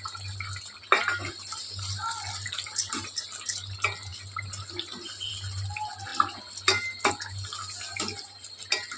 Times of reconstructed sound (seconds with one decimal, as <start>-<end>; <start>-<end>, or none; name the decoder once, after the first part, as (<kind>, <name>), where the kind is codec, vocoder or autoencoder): none